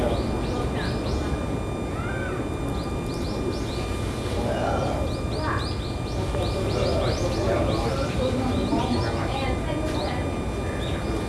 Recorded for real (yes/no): yes